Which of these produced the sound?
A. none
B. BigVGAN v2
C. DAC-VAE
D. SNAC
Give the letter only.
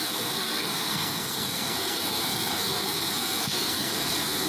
D